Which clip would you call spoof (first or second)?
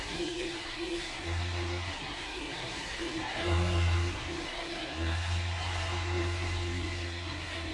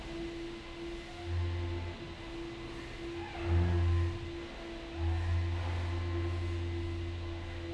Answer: first